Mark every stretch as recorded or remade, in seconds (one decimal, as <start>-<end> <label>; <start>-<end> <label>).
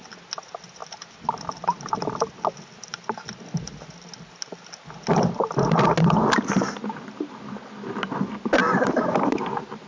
0.0-9.9 recorded